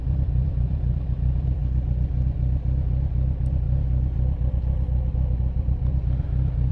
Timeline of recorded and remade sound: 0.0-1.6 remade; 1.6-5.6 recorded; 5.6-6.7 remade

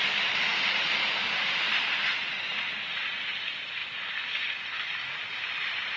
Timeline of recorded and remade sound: 0.0-6.0 recorded

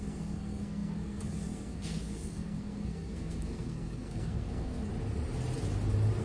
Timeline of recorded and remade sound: 0.0-4.9 remade; 4.9-6.2 recorded

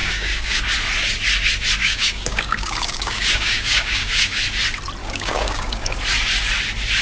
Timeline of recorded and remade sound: 0.0-0.6 remade; 0.6-1.8 recorded; 1.8-4.4 remade; 4.4-5.0 recorded; 5.0-6.0 remade; 6.0-7.0 recorded

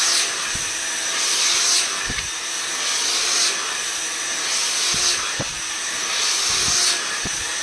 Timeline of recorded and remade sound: 0.0-7.6 recorded

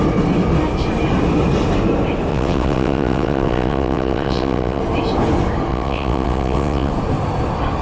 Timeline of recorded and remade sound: 0.0-2.3 recorded; 2.3-4.8 remade; 4.8-5.7 recorded; 5.7-6.9 remade; 6.9-7.8 recorded

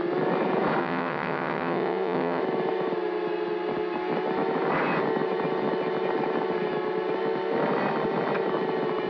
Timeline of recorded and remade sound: 0.0-0.8 recorded; 0.8-2.4 remade; 2.4-9.1 recorded

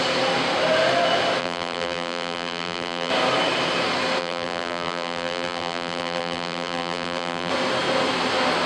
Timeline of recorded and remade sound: 0.0-1.4 recorded; 1.4-3.1 remade; 3.1-4.2 recorded; 4.2-7.5 remade; 7.5-8.7 recorded